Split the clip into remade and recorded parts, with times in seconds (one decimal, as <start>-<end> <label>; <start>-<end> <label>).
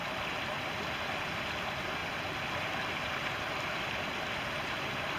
0.0-0.6 remade; 0.6-2.0 recorded; 2.0-3.3 remade; 3.3-5.2 recorded